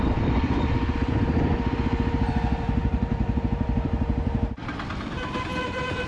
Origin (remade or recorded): remade